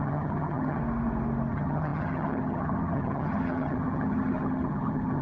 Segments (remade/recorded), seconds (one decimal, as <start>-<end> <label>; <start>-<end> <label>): 0.0-0.8 remade; 0.8-1.5 recorded; 1.5-5.2 remade